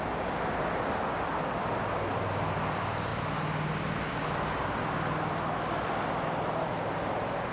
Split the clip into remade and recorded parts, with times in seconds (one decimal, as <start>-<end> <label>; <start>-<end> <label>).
0.0-7.5 recorded